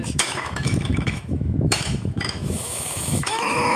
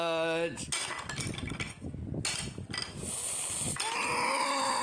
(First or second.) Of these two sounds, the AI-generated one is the first